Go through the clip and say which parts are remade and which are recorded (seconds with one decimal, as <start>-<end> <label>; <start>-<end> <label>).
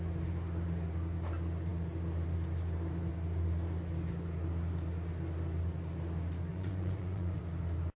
0.0-6.5 recorded; 6.5-7.4 remade; 7.4-8.0 recorded